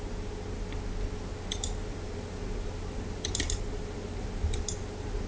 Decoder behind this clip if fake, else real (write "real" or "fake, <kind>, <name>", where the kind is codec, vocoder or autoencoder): real